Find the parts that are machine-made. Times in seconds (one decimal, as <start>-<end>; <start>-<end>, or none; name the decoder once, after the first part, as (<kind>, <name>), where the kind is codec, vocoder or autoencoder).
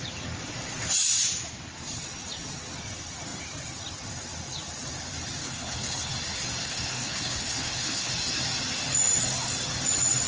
5.4-6.1 (codec, HILCodec); 6.6-8.1